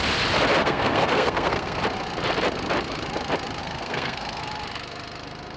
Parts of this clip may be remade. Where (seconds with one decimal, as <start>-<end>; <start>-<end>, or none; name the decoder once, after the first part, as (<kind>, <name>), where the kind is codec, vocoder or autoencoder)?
0.6-1.8 (codec, SNAC); 3.6-4.4